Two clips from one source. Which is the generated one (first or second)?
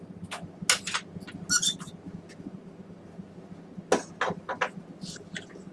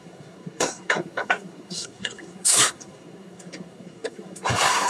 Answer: second